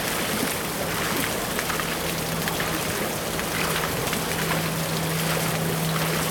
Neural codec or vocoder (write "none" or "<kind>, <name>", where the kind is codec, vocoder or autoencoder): none